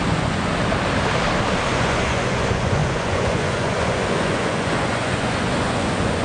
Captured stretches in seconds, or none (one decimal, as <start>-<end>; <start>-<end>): 0.5-1.7